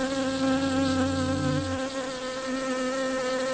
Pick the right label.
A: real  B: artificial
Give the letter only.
A